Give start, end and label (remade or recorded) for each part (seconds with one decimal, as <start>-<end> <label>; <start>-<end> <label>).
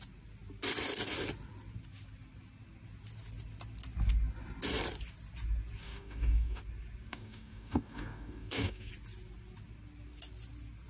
0.0-5.8 recorded; 5.8-6.6 remade; 6.6-7.1 recorded; 7.1-8.9 remade; 8.9-10.9 recorded